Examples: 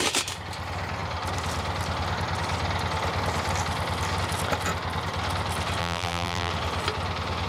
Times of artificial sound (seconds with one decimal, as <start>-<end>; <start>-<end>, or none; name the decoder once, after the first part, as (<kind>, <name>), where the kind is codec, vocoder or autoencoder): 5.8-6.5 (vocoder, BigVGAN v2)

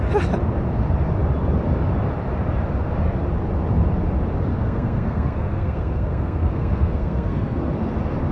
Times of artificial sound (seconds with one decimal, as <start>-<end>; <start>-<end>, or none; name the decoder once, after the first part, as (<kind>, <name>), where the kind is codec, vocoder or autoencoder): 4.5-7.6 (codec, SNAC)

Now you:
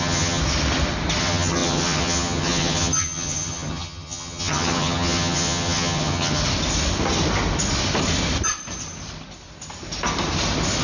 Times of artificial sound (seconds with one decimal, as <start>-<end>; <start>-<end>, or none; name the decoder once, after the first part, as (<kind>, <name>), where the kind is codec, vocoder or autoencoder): 0.0-0.4 (vocoder, HiFi-GAN); 1.2-6.4